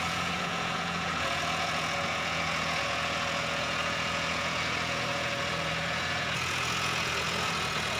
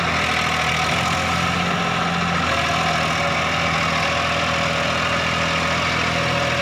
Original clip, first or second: second